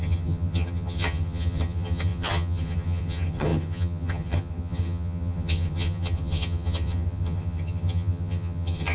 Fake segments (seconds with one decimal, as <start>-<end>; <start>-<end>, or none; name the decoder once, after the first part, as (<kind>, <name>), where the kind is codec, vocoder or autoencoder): 0.0-8.9 (vocoder, HiFi-GAN)